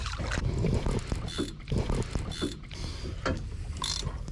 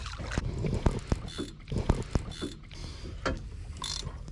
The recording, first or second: second